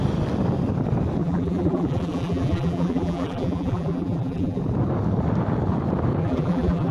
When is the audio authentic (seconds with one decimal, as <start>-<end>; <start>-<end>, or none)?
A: 0.0-1.2; 4.6-6.2

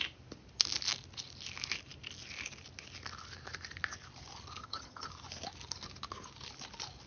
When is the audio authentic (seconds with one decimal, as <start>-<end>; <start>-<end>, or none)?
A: 0.0-4.6; 5.1-7.1

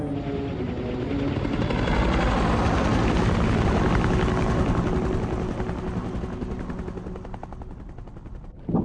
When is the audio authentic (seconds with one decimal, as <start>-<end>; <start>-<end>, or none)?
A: 0.0-8.8

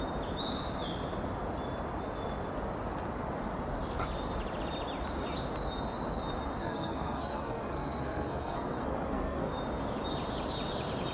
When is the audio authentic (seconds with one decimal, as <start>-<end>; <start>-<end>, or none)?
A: 0.0-6.6; 9.5-11.1